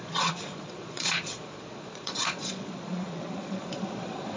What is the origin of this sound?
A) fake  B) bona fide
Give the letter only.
A